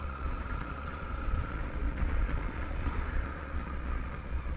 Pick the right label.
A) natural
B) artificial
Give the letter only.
B